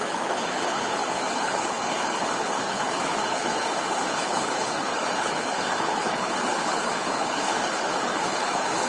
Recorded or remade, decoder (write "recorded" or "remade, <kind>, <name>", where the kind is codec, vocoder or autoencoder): remade, codec, HILCodec